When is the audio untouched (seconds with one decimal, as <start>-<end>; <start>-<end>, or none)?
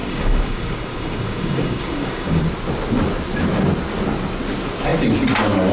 2.4-5.7